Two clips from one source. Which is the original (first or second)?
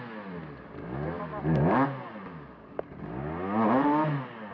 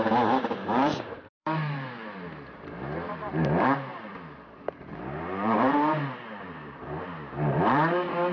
first